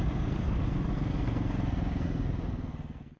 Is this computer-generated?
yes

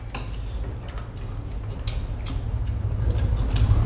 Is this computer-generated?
no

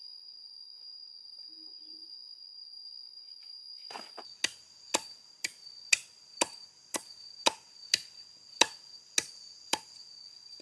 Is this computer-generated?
no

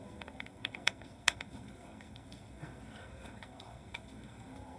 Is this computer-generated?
yes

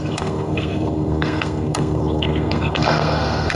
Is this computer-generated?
yes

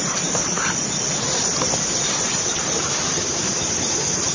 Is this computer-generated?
no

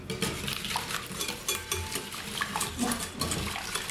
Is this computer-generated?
no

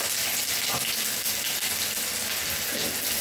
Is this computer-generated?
no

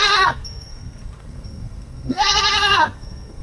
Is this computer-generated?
yes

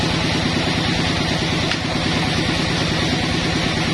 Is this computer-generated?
no